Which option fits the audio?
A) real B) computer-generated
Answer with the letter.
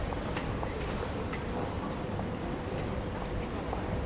B